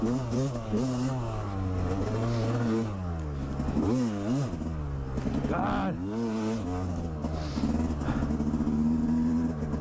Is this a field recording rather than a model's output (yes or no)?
yes